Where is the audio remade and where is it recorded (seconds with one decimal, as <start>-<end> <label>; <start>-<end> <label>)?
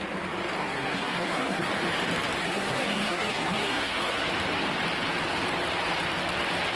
0.0-0.6 recorded; 0.6-1.7 remade; 1.7-2.4 recorded; 2.4-4.3 remade; 4.3-6.8 recorded